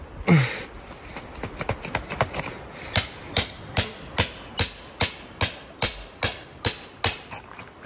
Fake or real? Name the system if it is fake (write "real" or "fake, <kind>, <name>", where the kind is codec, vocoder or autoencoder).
real